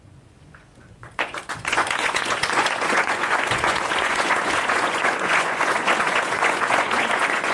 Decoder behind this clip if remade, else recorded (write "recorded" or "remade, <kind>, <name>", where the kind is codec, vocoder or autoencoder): remade, vocoder, Vocos